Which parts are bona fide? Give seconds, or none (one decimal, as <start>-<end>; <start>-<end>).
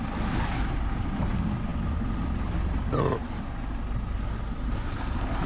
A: 0.0-5.5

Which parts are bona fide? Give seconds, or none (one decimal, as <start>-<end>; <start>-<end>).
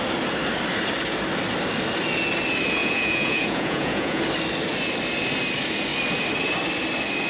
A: 0.0-2.8; 4.2-7.3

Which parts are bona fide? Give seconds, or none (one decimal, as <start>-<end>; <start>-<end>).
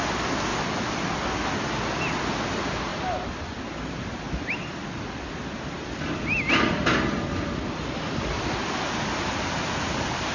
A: 0.0-10.3